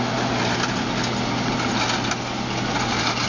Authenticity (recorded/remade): recorded